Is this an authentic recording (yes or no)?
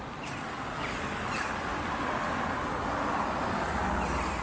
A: yes